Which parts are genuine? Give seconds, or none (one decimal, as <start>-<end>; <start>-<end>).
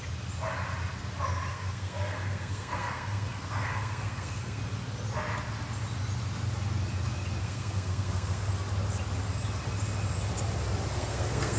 0.0-1.5; 4.6-7.4; 8.5-10.9